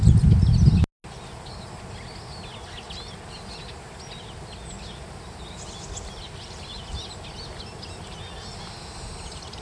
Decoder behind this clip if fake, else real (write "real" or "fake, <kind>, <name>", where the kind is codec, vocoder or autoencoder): real